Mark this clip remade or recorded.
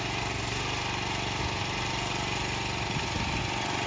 recorded